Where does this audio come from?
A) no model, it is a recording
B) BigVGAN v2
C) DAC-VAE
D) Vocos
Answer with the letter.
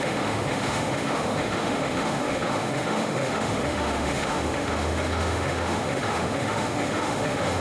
C